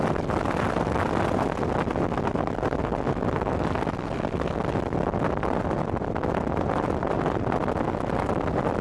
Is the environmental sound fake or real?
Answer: real